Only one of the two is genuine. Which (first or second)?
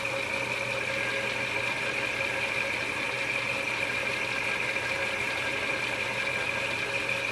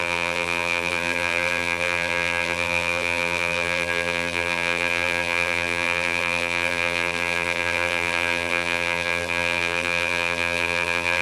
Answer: first